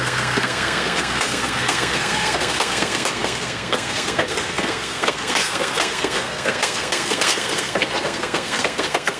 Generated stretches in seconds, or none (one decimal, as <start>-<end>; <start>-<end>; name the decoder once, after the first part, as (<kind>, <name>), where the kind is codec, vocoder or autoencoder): 0.0-9.2 (codec, SNAC)